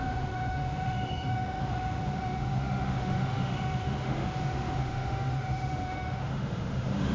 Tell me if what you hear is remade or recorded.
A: remade